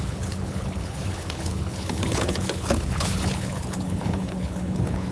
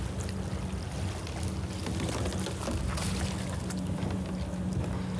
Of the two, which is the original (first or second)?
second